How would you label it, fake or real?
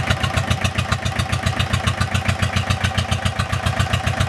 real